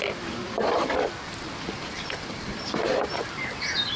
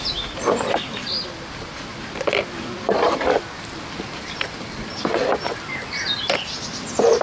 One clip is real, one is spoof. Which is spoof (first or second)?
first